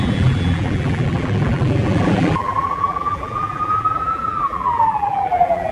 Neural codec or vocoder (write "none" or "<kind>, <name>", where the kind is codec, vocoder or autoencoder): vocoder, BigVGAN v2